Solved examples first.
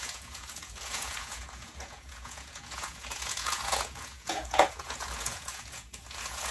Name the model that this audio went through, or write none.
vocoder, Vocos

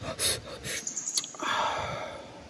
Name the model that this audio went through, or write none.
none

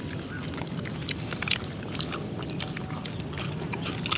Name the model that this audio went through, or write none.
none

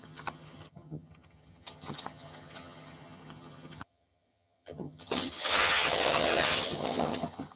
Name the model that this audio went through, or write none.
vocoder, HiFi-GAN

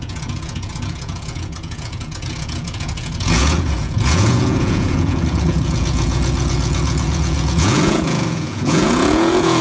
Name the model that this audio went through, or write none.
vocoder, Vocos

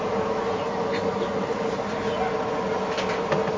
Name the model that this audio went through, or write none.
none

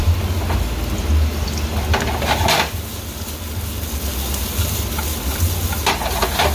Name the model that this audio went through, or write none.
none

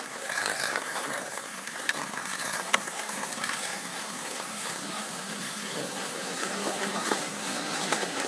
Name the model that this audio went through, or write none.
codec, SNAC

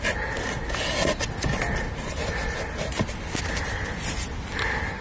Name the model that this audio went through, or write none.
none